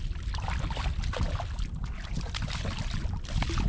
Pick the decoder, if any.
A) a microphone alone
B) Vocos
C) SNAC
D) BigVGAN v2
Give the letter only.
A